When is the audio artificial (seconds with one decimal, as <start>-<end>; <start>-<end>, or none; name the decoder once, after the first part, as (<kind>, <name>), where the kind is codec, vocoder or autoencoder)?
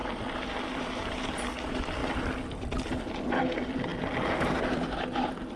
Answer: none